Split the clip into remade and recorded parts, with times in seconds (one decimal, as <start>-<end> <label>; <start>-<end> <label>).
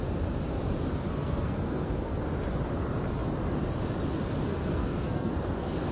0.0-1.1 recorded; 1.1-2.2 remade; 2.2-4.5 recorded; 4.5-5.3 remade; 5.3-5.9 recorded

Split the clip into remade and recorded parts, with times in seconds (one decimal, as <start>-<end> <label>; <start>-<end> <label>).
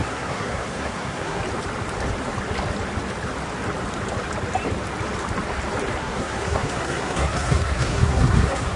0.0-1.4 remade; 1.4-6.0 recorded; 6.0-8.8 remade